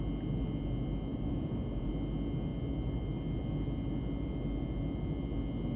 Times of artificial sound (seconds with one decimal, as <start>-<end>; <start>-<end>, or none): 1.1-1.9